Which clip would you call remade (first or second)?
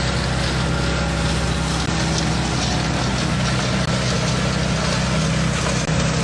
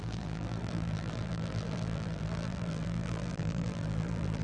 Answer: second